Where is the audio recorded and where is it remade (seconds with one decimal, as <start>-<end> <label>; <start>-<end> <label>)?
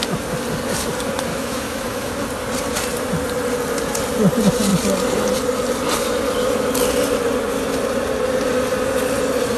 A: 0.0-1.3 recorded; 1.3-2.1 remade; 2.1-9.6 recorded